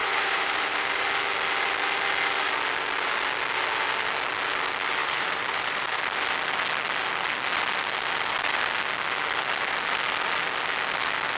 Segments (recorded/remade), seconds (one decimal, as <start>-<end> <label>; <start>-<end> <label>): 0.0-1.0 remade; 1.0-5.0 recorded; 5.0-6.0 remade; 6.0-11.4 recorded